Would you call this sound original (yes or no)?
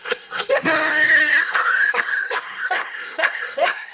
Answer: no